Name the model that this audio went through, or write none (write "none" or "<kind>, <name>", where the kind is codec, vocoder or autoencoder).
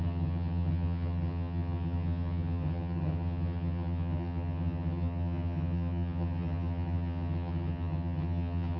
vocoder, HiFi-GAN